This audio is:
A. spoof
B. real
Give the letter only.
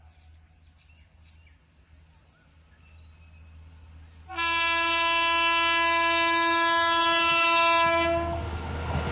B